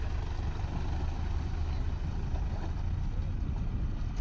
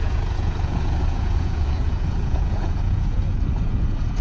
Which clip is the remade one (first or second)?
second